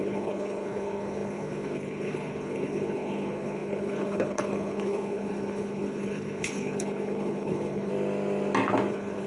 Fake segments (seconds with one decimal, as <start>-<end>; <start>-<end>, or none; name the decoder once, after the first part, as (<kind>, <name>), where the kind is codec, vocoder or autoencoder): 0.0-7.9 (codec, HILCodec); 8.9-9.3